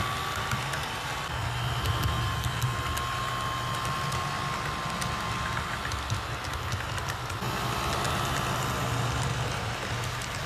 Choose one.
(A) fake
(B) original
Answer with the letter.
B